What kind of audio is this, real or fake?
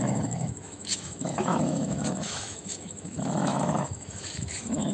fake